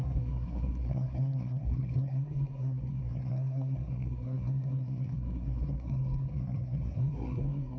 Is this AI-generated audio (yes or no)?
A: yes